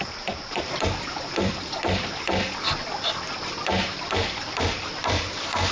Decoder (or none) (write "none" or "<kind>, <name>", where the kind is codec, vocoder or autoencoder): vocoder, BigVGAN v2